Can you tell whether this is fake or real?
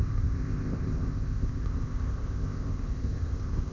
fake